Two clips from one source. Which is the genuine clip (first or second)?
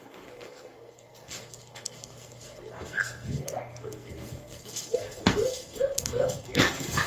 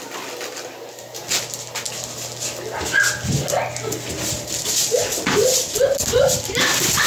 second